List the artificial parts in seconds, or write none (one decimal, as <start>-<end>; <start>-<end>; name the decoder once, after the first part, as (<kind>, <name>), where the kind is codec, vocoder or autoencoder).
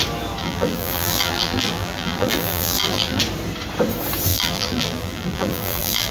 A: 0.4-3.2 (vocoder, BigVGAN v2); 4.3-6.1